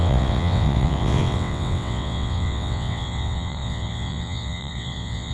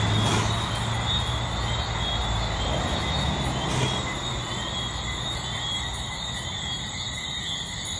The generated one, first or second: first